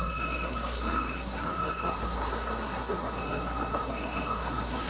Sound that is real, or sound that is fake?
fake